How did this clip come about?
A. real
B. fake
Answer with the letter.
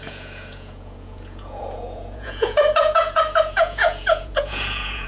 B